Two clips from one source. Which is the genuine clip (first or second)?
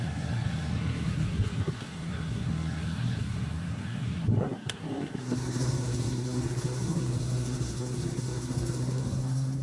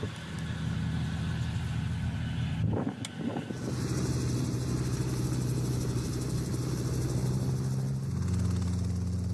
second